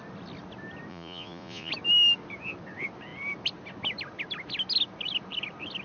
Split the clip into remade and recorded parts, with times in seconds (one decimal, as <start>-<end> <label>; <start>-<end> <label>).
0.0-0.9 recorded; 0.9-1.7 remade; 1.7-5.8 recorded